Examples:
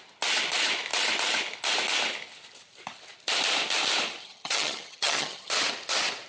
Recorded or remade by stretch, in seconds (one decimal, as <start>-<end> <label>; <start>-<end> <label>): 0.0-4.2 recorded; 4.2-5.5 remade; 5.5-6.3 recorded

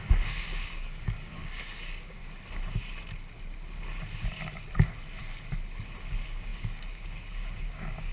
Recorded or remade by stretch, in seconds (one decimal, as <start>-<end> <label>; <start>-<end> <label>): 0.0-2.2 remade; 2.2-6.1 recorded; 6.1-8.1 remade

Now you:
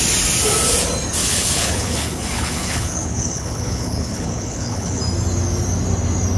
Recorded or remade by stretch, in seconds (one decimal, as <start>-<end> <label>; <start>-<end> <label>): 0.0-1.2 recorded; 1.2-5.0 remade; 5.0-6.4 recorded

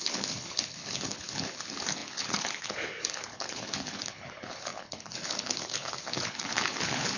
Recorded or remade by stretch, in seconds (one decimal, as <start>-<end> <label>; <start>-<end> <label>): 0.0-7.2 remade